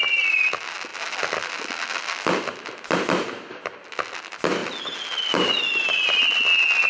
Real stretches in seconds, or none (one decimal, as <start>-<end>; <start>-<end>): 0.0-6.9